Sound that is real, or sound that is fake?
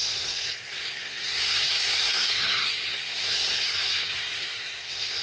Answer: fake